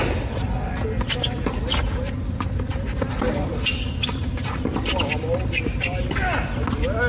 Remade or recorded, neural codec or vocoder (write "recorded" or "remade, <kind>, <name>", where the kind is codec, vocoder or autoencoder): recorded